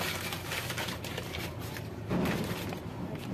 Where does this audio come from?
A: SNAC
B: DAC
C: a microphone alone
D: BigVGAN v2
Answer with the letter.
C